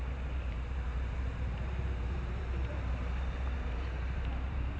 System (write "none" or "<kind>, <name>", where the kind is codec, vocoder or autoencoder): vocoder, BigVGAN v2